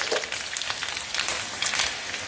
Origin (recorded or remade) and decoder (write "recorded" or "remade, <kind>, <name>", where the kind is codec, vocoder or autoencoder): recorded